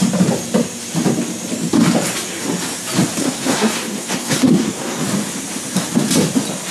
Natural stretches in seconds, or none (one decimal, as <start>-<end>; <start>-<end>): 0.0-3.2; 5.0-6.7